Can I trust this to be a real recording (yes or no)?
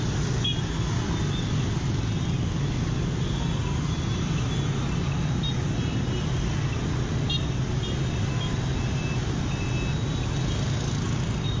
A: yes